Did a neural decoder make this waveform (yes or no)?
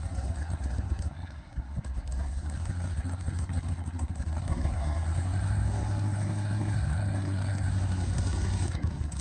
yes